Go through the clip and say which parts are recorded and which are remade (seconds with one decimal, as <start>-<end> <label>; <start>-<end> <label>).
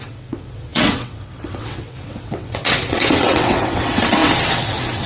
0.0-5.1 remade